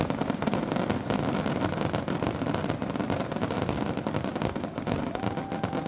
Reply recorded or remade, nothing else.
recorded